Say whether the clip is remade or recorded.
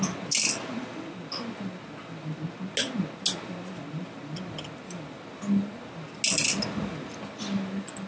recorded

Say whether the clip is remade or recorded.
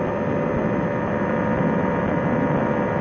recorded